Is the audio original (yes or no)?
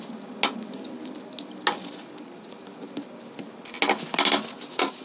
yes